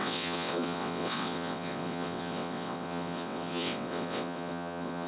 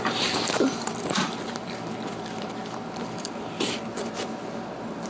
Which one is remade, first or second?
first